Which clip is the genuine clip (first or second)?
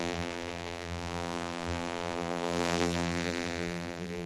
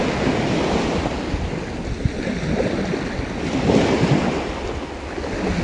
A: second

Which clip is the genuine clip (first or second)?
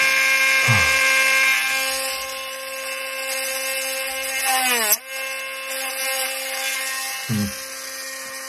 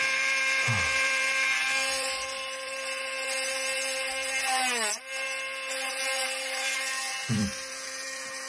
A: first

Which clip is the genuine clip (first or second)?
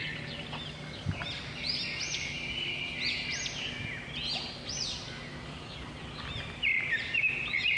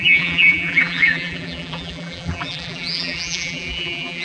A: first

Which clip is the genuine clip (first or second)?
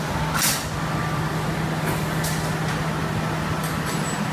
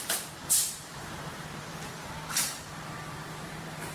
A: first